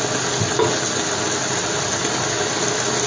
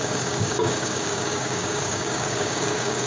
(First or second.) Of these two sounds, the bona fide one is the first